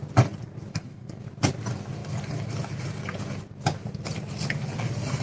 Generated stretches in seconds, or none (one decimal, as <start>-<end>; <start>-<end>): 0.7-1.2